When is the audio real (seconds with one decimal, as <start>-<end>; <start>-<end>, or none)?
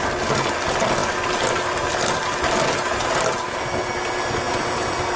0.0-5.2